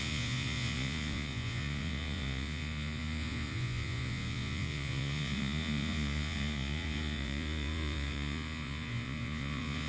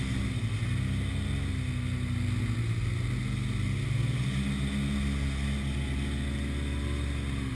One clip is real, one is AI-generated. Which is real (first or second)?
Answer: second